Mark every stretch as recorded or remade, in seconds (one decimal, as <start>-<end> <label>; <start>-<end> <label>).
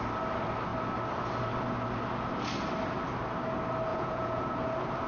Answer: 0.0-3.9 recorded; 3.9-4.5 remade; 4.5-5.1 recorded